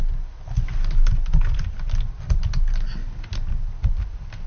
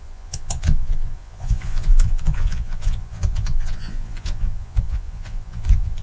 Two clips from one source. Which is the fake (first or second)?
second